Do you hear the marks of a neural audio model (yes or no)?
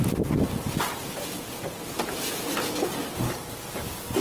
no